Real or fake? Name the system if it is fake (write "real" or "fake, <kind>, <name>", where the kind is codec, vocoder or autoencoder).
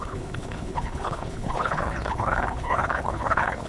fake, codec, HILCodec